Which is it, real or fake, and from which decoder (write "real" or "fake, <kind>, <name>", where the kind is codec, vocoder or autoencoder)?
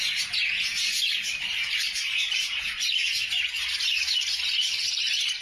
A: real